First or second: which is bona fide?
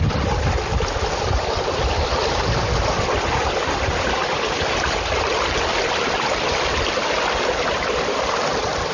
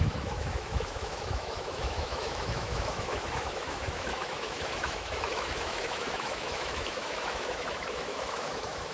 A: first